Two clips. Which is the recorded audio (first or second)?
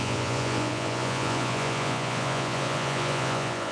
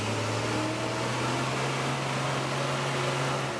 second